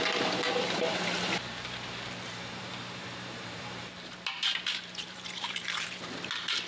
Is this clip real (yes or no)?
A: no